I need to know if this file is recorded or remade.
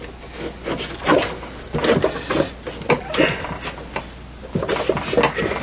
recorded